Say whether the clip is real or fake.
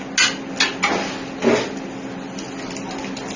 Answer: real